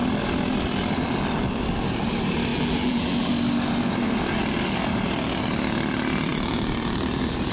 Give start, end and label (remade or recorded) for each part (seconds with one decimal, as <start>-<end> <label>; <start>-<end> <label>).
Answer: 0.0-2.5 recorded; 2.5-3.3 remade; 3.3-7.5 recorded